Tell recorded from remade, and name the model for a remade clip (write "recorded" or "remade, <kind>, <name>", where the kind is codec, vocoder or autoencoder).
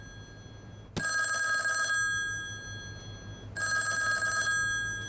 recorded